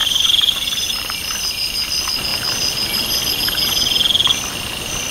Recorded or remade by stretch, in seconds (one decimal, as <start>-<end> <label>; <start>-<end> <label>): 0.0-1.1 remade; 1.1-5.1 recorded